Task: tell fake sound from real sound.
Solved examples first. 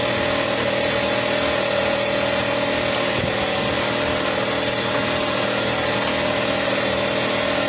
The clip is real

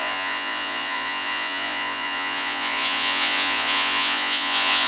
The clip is fake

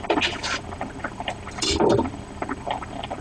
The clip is fake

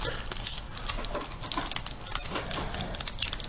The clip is real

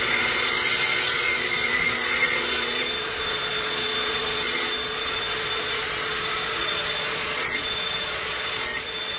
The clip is fake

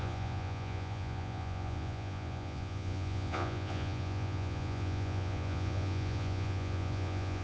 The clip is fake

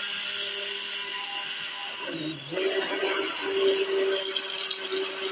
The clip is real